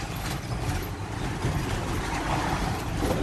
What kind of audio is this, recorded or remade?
recorded